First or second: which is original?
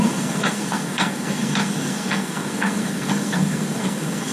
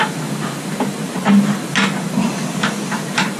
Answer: second